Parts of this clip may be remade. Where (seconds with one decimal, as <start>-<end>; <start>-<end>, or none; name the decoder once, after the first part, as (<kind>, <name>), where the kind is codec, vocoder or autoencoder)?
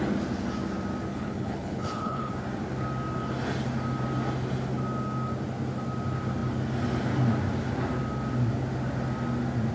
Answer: 1.1-2.3 (codec, HILCodec)